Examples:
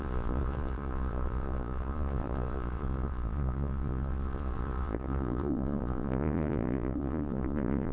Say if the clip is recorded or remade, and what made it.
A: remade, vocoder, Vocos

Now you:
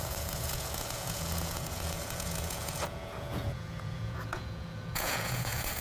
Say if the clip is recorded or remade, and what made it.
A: remade, vocoder, Vocos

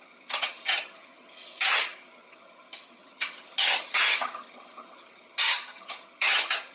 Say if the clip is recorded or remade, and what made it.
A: remade, vocoder, HiFi-GAN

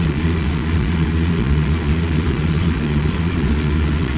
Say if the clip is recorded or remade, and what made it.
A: remade, vocoder, Vocos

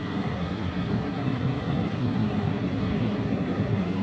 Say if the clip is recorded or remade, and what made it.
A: remade, codec, SNAC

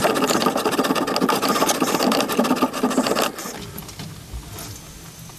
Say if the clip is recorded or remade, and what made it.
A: recorded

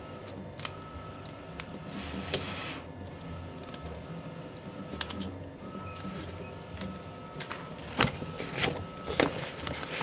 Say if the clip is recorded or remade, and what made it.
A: recorded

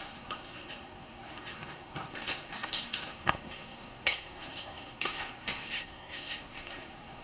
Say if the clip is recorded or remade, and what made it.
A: remade, codec, SNAC